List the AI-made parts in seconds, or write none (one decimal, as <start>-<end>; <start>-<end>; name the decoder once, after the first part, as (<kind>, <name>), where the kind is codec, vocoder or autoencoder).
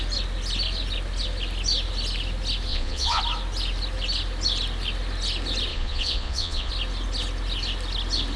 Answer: 2.7-3.2 (vocoder, Vocos); 5.7-6.7